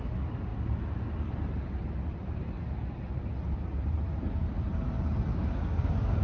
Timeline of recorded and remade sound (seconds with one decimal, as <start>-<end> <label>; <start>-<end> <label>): 0.0-5.3 recorded; 5.3-6.2 remade